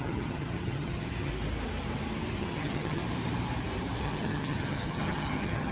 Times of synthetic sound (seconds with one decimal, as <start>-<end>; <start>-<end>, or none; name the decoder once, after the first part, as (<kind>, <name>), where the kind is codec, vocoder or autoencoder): 0.0-1.3 (vocoder, HiFi-GAN); 2.4-3.0; 4.0-5.7